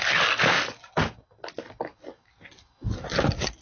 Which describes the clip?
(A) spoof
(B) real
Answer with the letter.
B